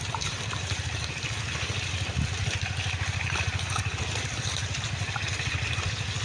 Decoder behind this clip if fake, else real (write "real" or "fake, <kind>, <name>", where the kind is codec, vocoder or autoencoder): real